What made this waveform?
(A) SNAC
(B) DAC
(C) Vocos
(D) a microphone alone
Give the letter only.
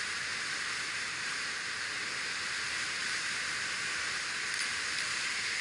D